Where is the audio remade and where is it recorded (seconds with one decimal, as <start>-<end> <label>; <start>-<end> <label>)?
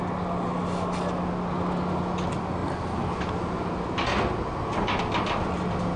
0.0-6.0 recorded